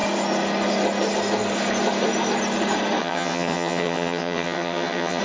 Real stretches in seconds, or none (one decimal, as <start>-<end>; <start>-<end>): 0.0-3.0